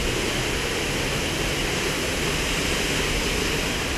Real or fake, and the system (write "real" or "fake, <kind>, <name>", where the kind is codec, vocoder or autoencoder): real